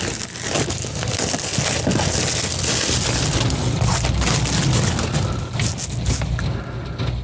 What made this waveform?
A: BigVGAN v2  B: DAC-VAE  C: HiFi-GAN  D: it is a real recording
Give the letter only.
D